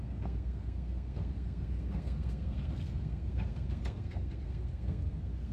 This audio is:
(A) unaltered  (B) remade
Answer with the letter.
B